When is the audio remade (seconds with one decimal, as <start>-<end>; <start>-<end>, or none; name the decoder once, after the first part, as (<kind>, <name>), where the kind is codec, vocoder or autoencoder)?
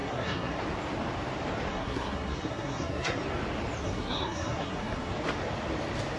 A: 0.0-0.6 (codec, SNAC); 1.7-3.2; 3.8-5.1